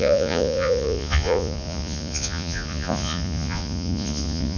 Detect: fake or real fake